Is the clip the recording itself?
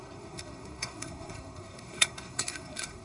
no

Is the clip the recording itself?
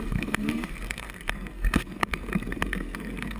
no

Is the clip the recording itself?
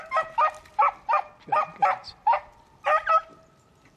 yes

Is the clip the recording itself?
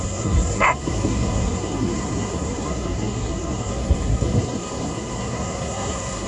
no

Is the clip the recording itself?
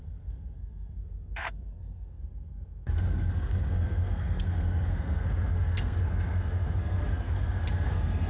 no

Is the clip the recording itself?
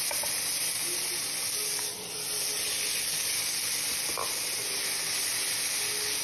yes